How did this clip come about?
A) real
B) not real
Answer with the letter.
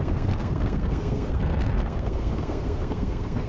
B